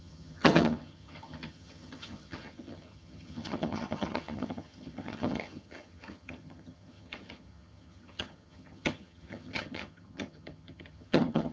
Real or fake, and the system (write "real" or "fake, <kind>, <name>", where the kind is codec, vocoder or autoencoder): fake, vocoder, HiFi-GAN